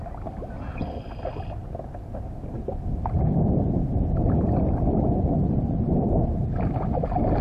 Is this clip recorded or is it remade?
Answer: recorded